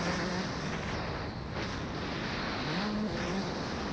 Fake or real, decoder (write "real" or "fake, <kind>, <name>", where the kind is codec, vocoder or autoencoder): real